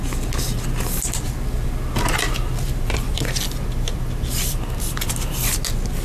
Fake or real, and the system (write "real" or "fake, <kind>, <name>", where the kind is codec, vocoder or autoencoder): real